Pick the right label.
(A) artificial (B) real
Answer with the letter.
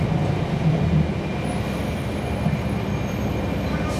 B